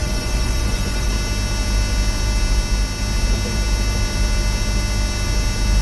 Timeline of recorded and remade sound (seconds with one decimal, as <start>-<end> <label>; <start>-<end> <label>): 0.0-1.1 remade; 1.1-5.8 recorded